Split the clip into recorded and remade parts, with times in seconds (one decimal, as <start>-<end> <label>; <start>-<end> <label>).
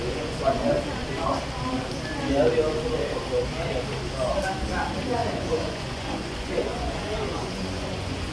0.0-0.7 remade; 0.7-5.2 recorded; 5.2-8.3 remade